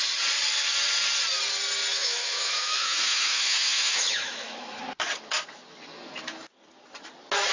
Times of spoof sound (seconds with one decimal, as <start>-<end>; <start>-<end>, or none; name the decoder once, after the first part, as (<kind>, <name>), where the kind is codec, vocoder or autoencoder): 1.9-4.8 (autoencoder, DAC-VAE)